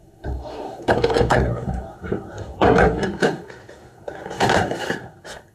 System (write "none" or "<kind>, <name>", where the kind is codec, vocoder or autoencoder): codec, SNAC